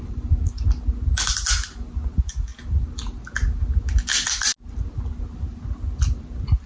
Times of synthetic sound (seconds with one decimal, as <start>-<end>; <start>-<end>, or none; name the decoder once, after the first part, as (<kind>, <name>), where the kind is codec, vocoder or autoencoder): none